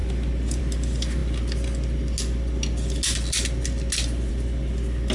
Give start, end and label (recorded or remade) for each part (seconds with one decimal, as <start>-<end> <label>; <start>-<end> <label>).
0.0-5.1 recorded